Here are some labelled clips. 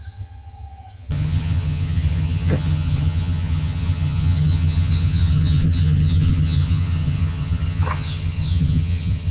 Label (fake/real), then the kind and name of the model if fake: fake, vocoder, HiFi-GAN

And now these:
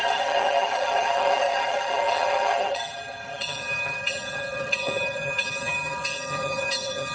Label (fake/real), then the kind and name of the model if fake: fake, vocoder, HiFi-GAN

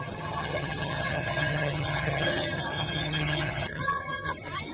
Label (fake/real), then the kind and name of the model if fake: fake, vocoder, HiFi-GAN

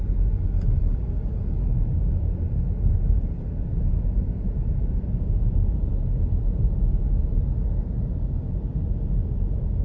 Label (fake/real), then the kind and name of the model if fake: real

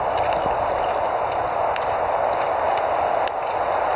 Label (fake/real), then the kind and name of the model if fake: real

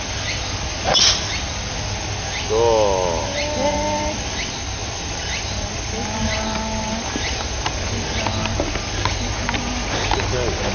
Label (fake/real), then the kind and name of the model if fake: real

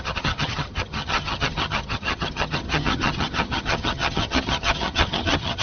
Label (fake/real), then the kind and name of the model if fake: fake, vocoder, HiFi-GAN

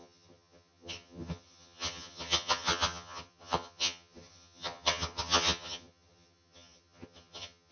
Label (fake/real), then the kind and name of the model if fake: fake, vocoder, HiFi-GAN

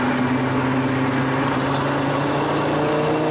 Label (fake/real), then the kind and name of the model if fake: real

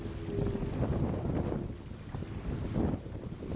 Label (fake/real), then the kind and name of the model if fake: real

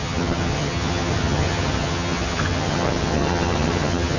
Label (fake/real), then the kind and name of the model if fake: fake, vocoder, HiFi-GAN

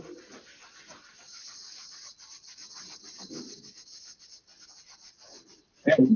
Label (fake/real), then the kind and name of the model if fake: real